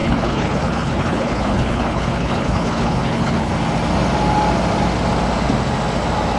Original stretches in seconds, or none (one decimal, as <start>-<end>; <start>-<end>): 3.5-6.4